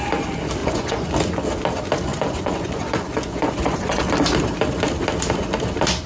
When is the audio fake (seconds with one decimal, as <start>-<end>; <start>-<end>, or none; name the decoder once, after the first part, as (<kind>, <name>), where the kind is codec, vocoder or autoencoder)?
0.6-1.1 (vocoder, Vocos); 2.1-4.0